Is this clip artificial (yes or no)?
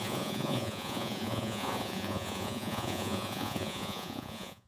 yes